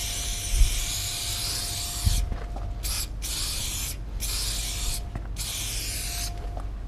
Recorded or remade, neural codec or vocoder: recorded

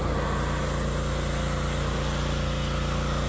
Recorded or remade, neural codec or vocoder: recorded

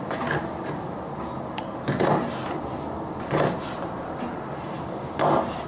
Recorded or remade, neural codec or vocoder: recorded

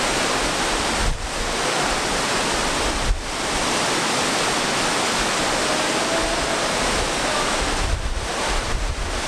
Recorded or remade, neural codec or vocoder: recorded